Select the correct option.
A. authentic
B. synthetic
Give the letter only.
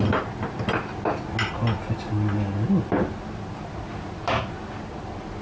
A